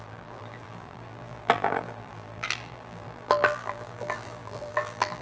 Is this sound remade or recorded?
remade